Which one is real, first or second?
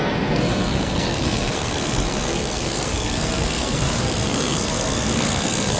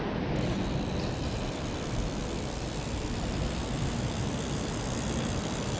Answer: second